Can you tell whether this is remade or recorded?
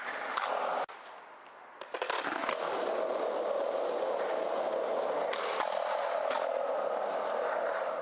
recorded